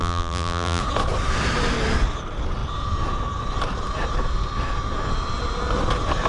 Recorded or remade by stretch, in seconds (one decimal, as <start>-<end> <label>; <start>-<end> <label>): 0.0-0.8 remade; 0.8-6.3 recorded

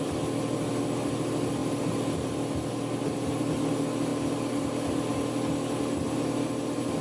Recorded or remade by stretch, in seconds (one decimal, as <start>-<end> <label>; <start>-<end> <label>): 0.0-1.6 recorded; 1.6-2.3 remade; 2.3-7.0 recorded

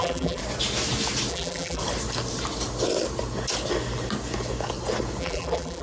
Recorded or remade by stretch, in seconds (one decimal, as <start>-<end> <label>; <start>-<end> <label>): 0.0-0.4 remade; 0.4-1.3 recorded; 1.3-1.8 remade; 1.8-5.2 recorded; 5.2-5.8 remade

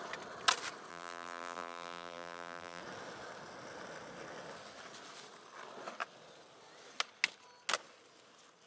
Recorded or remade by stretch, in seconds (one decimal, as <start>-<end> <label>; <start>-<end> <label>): 0.0-0.9 recorded; 0.9-2.8 remade; 2.8-8.7 recorded